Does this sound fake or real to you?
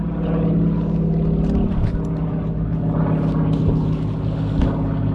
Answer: real